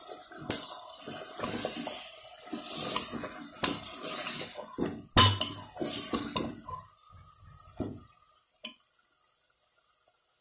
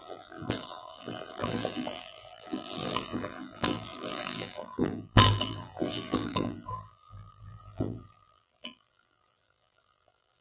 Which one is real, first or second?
first